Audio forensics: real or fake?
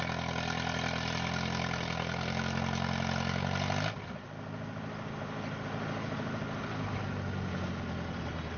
real